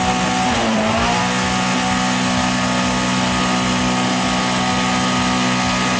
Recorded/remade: recorded